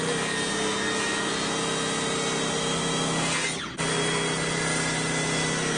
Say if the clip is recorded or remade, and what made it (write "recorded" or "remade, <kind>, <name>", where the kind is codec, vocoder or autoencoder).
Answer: recorded